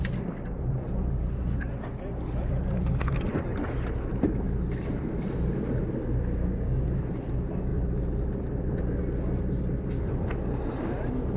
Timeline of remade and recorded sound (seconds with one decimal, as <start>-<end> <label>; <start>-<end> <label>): 0.0-6.4 recorded; 6.4-7.0 remade; 7.0-11.4 recorded